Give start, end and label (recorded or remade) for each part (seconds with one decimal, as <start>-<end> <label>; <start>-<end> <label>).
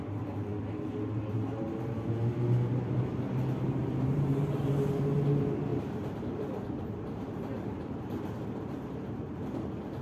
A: 0.0-3.8 recorded; 3.8-4.6 remade; 4.6-5.7 recorded; 5.7-8.0 remade; 8.0-10.0 recorded